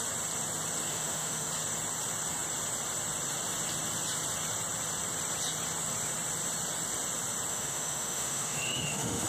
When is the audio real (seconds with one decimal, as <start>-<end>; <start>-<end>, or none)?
0.0-0.9; 1.5-7.5